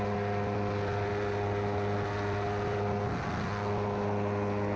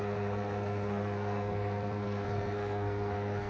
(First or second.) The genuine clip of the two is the first